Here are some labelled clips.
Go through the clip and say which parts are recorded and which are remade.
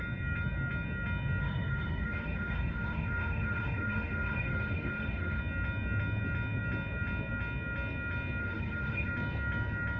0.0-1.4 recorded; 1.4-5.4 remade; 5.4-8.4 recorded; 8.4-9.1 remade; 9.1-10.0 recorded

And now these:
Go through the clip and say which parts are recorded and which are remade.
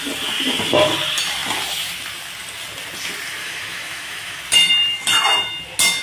0.0-3.4 recorded; 3.4-4.4 remade; 4.4-6.0 recorded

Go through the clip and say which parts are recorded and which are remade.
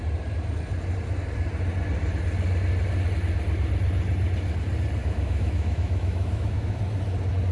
0.0-5.0 recorded; 5.0-6.8 remade; 6.8-7.5 recorded